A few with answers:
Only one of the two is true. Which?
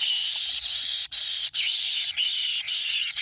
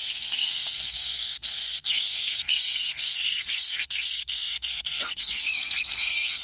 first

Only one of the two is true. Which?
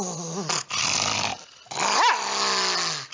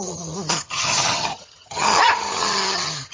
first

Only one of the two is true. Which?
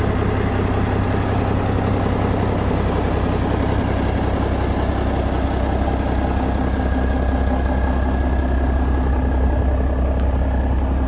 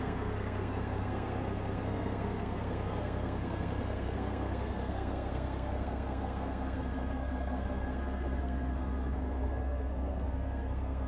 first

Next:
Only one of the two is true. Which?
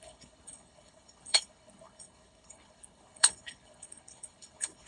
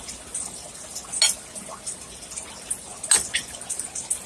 second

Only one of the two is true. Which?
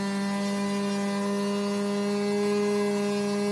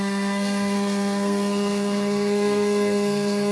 first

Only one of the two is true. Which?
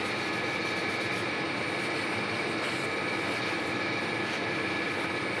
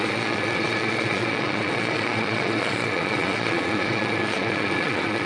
first